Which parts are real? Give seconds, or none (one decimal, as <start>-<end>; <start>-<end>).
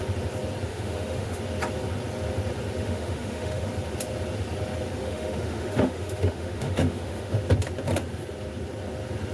0.0-0.7; 1.4-2.8; 3.7-5.0; 7.4-9.3